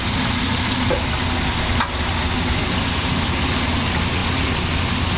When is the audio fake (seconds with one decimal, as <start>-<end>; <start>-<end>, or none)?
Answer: none